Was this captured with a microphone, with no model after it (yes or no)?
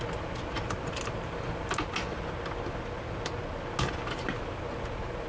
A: yes